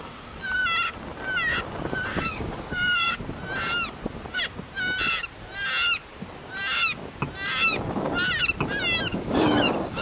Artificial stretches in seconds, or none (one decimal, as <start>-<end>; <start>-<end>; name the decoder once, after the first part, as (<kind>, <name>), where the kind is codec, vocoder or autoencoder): 2.1-3.2 (codec, DAC); 9.1-10.0